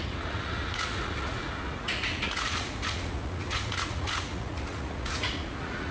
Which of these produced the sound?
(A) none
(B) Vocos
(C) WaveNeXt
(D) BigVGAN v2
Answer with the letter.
B